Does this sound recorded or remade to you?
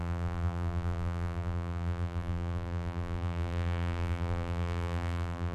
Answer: remade